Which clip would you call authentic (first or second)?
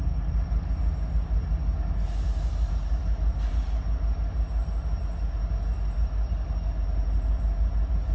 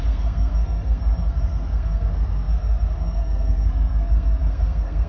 first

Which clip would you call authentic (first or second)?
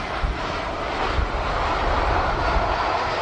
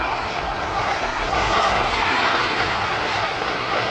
first